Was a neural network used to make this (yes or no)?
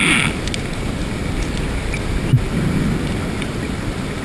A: no